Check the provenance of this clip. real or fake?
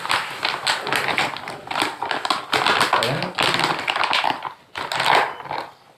real